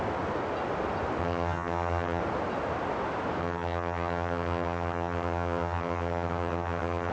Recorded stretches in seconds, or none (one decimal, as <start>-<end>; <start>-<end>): 0.0-1.2; 2.2-3.4